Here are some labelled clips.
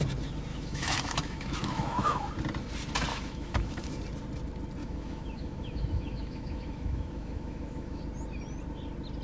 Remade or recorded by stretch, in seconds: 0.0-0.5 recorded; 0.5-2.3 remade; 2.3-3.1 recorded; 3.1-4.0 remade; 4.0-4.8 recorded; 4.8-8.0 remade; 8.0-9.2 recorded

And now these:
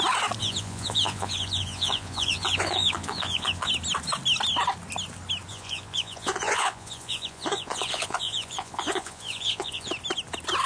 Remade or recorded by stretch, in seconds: 0.0-0.4 recorded; 0.4-3.7 remade; 3.7-5.5 recorded; 5.5-9.9 remade; 9.9-10.7 recorded

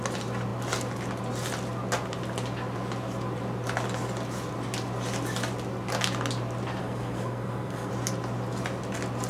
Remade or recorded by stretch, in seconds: 0.0-6.8 recorded; 6.8-7.9 remade; 7.9-9.3 recorded